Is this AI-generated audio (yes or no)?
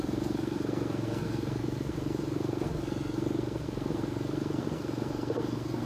yes